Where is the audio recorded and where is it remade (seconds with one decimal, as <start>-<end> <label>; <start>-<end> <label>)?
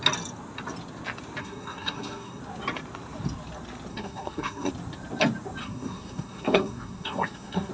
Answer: 0.0-1.4 recorded; 1.4-2.4 remade; 2.4-3.9 recorded; 3.9-4.7 remade; 4.7-5.6 recorded; 5.6-7.7 remade